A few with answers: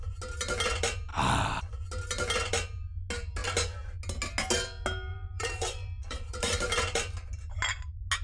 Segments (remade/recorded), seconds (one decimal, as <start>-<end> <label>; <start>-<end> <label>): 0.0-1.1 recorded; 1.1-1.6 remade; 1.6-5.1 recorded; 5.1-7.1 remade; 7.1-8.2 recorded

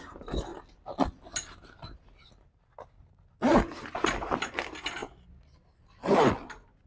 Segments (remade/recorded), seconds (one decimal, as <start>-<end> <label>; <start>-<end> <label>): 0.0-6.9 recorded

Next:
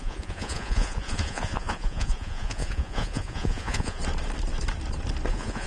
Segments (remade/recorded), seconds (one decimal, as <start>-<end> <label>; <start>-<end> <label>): 0.0-4.0 remade; 4.0-5.3 recorded; 5.3-5.7 remade

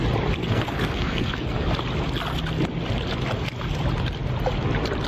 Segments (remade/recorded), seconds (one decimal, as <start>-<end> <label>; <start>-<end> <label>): 0.0-0.4 recorded; 0.4-1.7 remade; 1.7-5.1 recorded

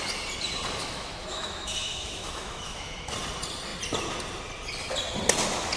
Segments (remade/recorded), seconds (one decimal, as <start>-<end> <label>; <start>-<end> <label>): 0.0-0.8 recorded; 0.8-3.1 remade; 3.1-5.8 recorded

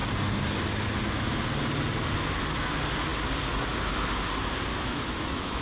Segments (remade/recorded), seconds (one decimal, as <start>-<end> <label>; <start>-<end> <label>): 0.0-4.7 recorded; 4.7-5.6 remade

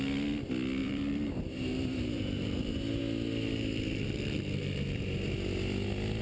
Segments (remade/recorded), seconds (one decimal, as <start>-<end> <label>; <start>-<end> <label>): 0.0-0.8 recorded; 0.8-3.0 remade; 3.0-6.2 recorded

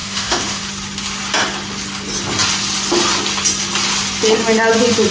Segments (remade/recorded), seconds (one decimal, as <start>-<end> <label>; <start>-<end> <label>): 0.0-0.6 remade; 0.6-5.1 recorded